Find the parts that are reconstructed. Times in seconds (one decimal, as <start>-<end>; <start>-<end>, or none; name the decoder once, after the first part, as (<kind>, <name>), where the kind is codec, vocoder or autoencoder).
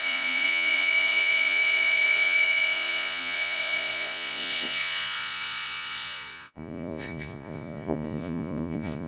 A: 0.0-9.1 (vocoder, Vocos)